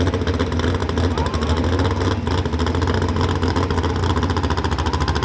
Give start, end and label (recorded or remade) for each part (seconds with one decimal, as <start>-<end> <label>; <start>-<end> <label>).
0.0-5.2 recorded